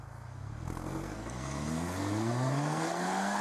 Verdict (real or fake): fake